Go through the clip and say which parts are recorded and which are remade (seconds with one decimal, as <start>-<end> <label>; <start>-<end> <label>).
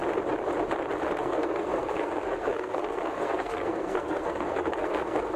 0.0-1.2 recorded; 1.2-5.4 remade